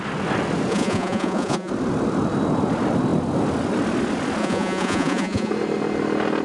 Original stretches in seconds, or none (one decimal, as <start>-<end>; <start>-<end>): 0.0-0.7; 1.7-4.4; 5.5-6.4